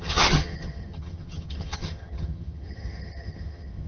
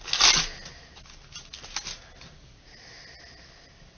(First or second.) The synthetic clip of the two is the first